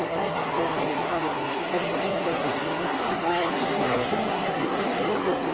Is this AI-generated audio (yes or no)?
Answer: yes